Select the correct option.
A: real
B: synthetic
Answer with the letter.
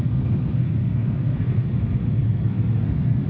B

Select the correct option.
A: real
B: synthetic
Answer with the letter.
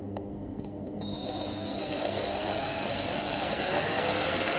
B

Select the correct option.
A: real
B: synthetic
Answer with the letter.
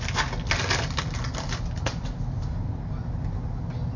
A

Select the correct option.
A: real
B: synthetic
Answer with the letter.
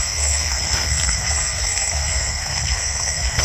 B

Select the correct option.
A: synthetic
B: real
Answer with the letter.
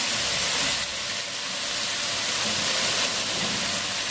B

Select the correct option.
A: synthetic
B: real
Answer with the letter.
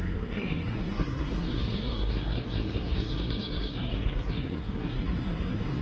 A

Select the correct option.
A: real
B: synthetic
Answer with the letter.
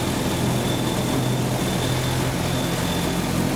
A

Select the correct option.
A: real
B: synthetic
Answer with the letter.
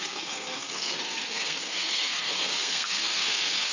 B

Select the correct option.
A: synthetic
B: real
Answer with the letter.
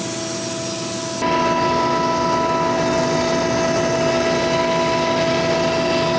B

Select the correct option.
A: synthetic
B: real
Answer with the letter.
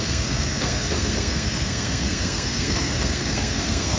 A